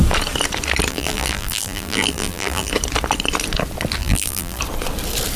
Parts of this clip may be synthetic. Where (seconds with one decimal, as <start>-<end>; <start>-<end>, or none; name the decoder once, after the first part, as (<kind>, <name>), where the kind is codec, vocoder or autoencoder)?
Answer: 0.9-2.7 (vocoder, BigVGAN v2); 4.0-4.6